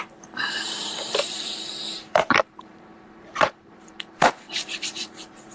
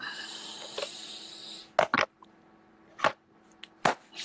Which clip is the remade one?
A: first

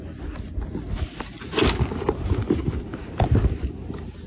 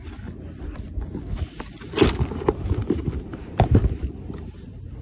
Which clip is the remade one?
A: second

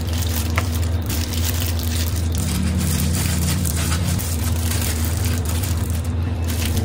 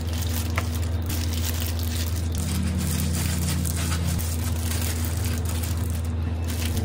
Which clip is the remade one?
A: first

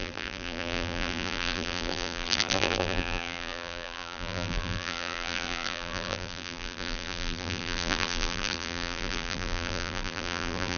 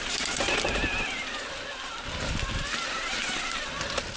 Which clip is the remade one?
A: first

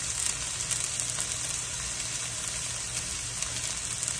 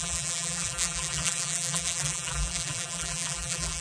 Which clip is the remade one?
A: second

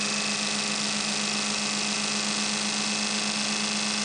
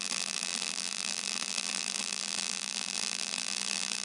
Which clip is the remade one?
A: second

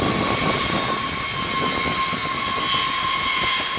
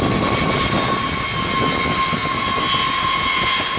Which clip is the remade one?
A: first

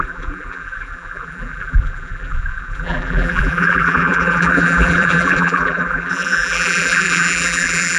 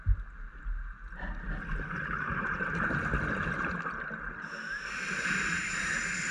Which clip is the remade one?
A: first